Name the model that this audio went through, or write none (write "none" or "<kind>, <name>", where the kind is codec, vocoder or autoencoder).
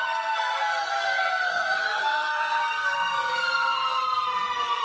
codec, SNAC